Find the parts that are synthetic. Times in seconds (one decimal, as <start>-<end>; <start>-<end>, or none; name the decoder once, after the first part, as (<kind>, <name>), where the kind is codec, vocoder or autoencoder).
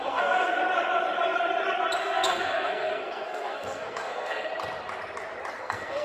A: 0.0-0.6 (codec, SNAC); 2.0-4.5; 5.6-6.0